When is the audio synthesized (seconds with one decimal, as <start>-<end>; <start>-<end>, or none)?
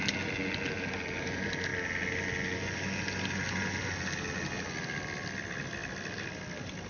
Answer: none